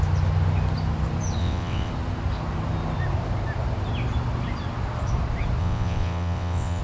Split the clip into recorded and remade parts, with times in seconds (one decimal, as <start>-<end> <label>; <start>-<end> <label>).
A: 0.0-1.4 recorded; 1.4-1.9 remade; 1.9-5.6 recorded; 5.6-6.8 remade